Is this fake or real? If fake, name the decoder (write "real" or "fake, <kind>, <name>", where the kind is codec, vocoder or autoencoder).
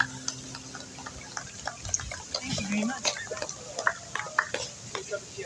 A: real